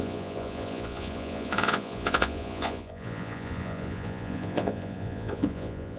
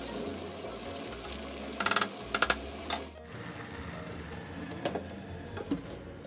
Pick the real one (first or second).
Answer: second